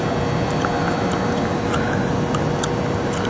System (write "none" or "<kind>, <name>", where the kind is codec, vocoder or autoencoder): none